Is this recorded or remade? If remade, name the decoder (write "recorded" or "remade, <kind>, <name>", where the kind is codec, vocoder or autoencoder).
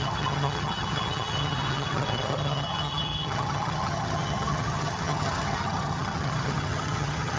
remade, vocoder, HiFi-GAN